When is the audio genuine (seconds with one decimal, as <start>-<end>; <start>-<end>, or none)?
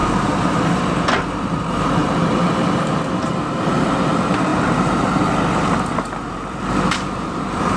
none